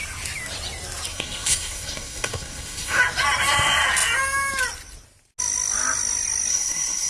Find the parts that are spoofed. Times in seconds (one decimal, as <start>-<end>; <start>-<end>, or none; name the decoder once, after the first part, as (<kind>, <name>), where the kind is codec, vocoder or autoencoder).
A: 1.1-3.0 (codec, SNAC); 6.5-7.1